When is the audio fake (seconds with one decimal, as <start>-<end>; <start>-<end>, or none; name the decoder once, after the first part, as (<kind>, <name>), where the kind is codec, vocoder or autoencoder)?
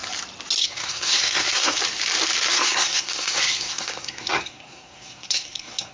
0.6-1.8 (codec, SNAC); 2.5-5.9